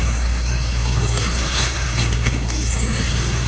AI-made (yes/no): yes